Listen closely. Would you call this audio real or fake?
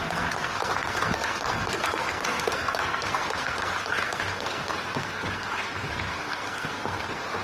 fake